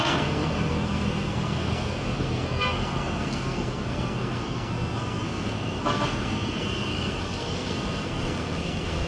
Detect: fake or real fake